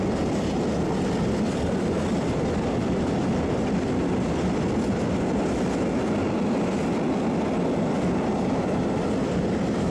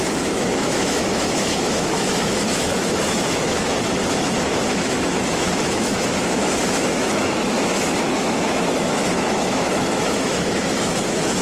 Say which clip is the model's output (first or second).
second